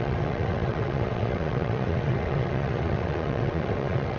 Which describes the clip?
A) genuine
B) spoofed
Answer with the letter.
B